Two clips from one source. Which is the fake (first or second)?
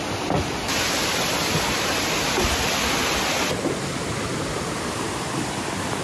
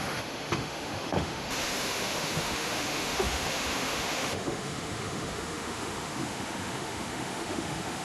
second